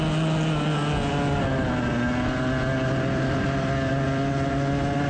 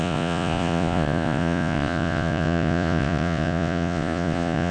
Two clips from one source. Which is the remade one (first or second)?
second